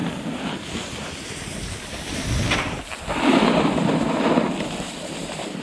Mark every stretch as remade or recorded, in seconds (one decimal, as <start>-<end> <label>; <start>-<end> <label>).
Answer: 0.0-5.6 recorded